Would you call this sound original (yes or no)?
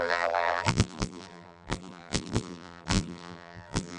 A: no